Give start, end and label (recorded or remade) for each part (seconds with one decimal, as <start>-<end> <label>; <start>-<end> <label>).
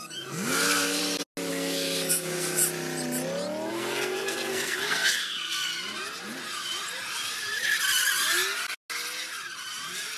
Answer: 0.0-1.0 remade; 1.0-1.5 recorded; 1.5-2.6 remade; 2.6-3.7 recorded; 3.7-5.7 remade; 5.7-10.2 recorded